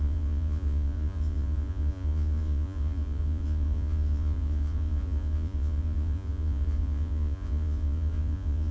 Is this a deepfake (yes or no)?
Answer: yes